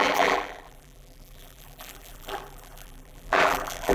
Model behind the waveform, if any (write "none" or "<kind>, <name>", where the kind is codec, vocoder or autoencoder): vocoder, BigVGAN v2